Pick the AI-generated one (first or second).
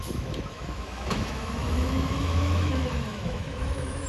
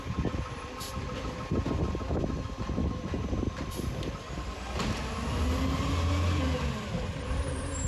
first